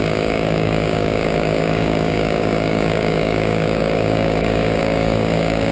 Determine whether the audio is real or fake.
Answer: fake